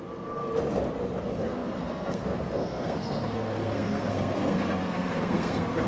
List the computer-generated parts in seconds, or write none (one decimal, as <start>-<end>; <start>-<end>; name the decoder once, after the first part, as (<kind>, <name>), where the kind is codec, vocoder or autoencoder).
0.0-0.4 (codec, SNAC); 1.2-5.9